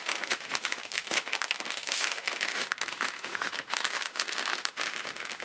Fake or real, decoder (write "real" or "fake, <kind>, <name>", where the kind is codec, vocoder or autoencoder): fake, autoencoder, DAC-VAE